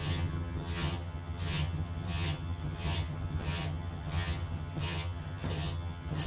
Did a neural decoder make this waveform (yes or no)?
yes